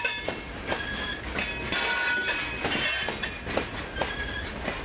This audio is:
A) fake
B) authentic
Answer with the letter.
B